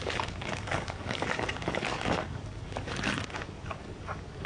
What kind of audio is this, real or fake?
fake